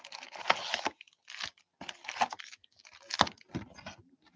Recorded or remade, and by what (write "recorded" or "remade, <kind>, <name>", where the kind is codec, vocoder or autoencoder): recorded